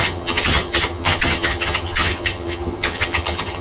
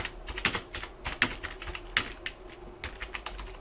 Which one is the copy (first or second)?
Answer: first